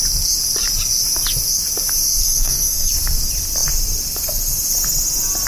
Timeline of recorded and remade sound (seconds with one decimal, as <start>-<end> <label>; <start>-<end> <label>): 0.0-2.2 recorded; 2.2-2.9 remade; 2.9-5.5 recorded